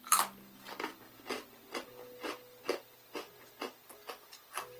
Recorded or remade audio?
recorded